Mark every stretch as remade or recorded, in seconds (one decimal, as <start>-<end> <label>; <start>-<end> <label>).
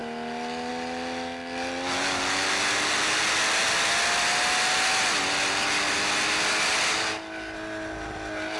0.0-8.6 recorded